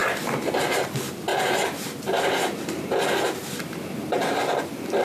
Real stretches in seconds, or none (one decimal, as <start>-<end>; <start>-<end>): 0.6-1.3; 3.8-5.0